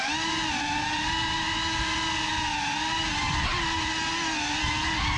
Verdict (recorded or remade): recorded